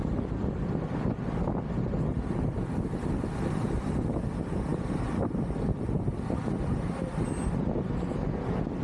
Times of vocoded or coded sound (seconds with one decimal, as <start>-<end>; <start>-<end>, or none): none